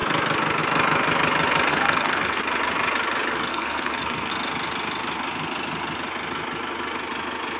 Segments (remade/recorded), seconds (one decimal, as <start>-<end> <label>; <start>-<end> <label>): 0.0-1.7 recorded; 1.7-2.4 remade; 2.4-3.5 recorded; 3.5-4.3 remade; 4.3-7.6 recorded